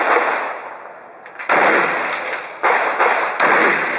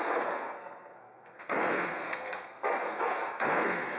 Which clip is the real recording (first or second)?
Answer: first